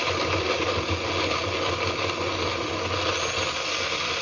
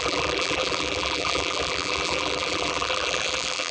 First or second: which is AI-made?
second